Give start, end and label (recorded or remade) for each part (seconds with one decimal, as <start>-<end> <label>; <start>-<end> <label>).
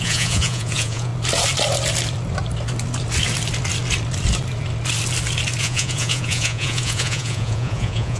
0.0-1.1 remade; 1.1-5.6 recorded; 5.6-8.2 remade